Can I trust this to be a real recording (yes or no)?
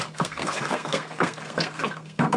no